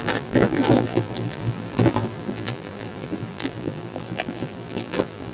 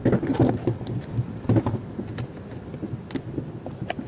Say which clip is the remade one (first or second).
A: first